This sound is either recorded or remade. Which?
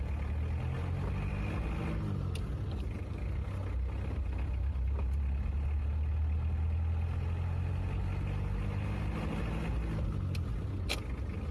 recorded